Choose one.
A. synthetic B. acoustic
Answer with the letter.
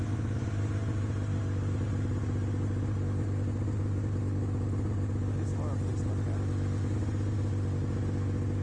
B